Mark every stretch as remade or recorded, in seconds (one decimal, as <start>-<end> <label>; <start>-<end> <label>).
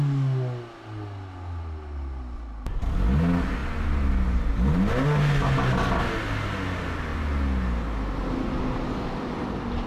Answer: 0.0-9.9 recorded